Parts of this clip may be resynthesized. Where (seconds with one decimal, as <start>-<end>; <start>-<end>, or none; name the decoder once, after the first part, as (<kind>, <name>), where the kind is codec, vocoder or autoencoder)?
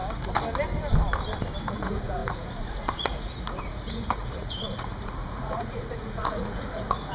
1.6-7.1 (vocoder, Vocos)